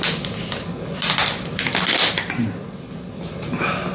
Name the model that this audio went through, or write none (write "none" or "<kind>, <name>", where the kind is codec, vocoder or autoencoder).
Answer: none